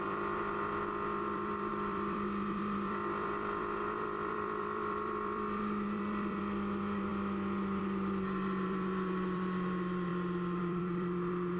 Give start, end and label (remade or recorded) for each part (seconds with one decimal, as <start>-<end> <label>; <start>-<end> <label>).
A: 0.0-7.1 remade; 7.1-7.8 recorded; 7.8-10.1 remade; 10.1-10.6 recorded; 10.6-11.6 remade